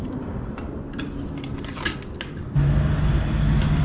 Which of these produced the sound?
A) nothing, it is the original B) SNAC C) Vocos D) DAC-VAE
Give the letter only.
A